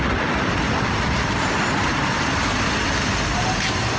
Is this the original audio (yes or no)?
yes